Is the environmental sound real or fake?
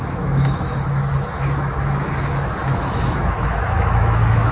fake